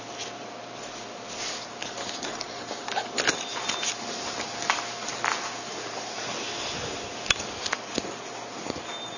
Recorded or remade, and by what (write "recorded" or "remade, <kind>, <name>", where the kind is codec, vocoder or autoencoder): recorded